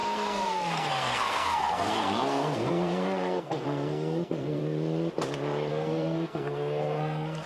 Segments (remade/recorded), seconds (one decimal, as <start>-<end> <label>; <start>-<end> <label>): 0.0-4.6 remade; 4.6-5.7 recorded; 5.7-7.5 remade